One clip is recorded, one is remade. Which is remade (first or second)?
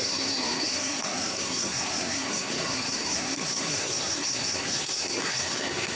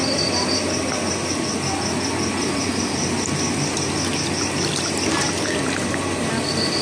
first